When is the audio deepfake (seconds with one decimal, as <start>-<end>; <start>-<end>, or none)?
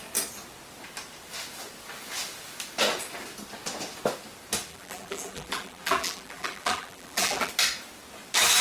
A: 4.7-7.5